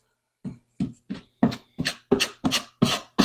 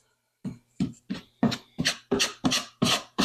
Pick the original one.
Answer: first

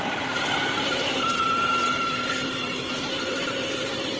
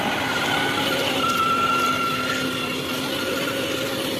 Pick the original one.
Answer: second